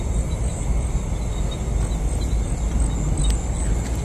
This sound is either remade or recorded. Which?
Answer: recorded